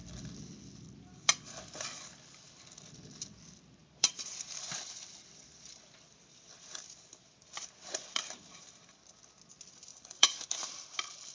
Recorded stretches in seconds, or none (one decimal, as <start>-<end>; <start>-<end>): 0.0-3.8; 9.0-9.9; 10.7-11.3